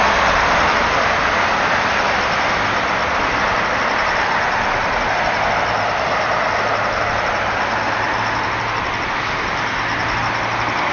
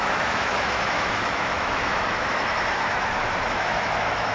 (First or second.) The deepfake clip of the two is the second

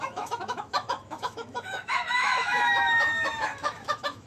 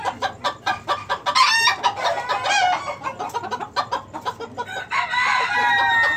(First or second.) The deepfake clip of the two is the first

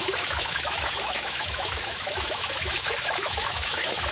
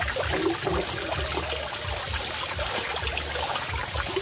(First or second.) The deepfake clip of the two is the first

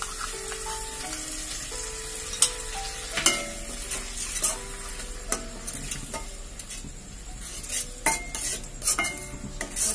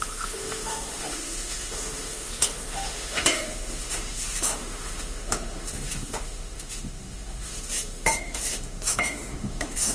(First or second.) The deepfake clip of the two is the second